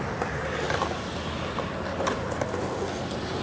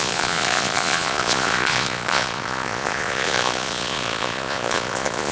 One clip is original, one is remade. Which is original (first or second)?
first